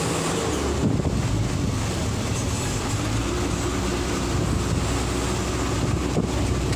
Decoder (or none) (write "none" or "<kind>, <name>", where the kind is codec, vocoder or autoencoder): none